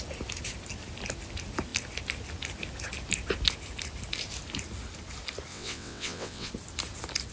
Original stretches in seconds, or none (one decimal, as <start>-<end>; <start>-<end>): 0.0-5.5; 6.5-7.3